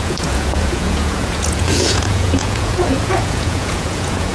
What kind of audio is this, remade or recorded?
remade